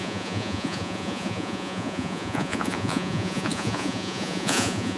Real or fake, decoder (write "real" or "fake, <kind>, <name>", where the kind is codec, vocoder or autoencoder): fake, vocoder, Vocos